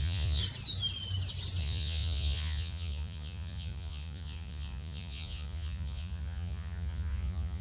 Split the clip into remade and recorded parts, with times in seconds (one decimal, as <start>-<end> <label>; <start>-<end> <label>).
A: 0.0-0.4 remade; 0.4-1.6 recorded; 1.6-7.6 remade